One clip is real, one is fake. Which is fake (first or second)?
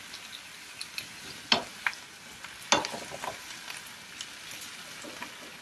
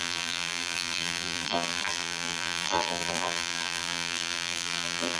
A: second